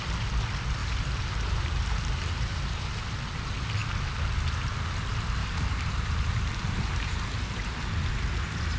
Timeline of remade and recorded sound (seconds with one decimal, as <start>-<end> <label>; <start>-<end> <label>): 0.0-0.8 recorded; 0.8-3.0 remade; 3.0-5.4 recorded; 5.4-7.2 remade; 7.2-8.8 recorded